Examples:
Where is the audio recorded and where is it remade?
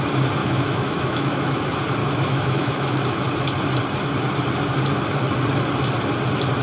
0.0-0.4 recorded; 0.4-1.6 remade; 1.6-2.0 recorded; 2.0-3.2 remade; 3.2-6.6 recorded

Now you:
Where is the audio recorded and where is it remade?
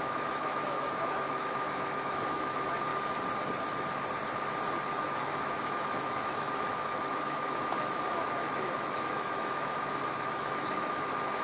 0.0-2.9 remade; 2.9-5.0 recorded; 5.0-11.4 remade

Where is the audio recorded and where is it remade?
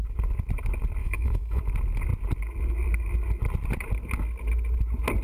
0.0-1.0 recorded; 1.0-1.6 remade; 1.6-5.2 recorded